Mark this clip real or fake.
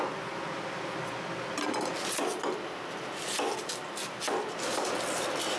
real